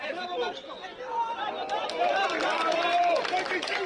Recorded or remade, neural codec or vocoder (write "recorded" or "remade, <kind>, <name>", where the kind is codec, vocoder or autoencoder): remade, vocoder, BigVGAN v2